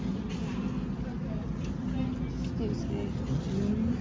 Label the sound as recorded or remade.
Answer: recorded